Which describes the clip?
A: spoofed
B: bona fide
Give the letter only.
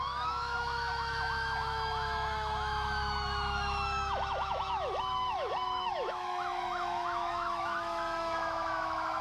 A